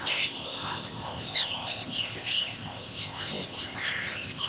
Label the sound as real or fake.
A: fake